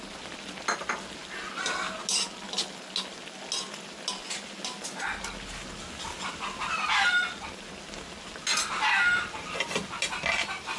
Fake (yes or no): no